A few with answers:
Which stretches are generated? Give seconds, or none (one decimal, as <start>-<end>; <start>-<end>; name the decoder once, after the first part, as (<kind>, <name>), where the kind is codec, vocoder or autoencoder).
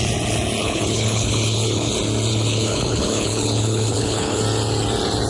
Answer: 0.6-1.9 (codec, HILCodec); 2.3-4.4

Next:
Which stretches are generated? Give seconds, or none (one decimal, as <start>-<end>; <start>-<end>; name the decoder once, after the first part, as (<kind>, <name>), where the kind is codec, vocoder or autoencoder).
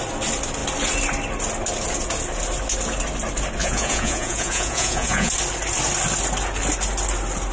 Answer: 3.6-5.3 (vocoder, Vocos)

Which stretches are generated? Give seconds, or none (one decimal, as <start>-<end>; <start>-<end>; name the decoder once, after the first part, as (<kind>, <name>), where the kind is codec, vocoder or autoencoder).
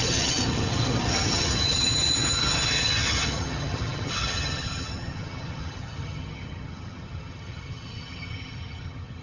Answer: 0.0-9.2 (vocoder, HiFi-GAN)